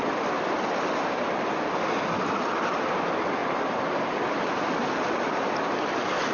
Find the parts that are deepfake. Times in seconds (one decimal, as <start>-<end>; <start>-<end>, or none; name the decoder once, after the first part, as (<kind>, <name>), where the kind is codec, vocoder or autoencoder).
3.4-4.0 (vocoder, BigVGAN v2)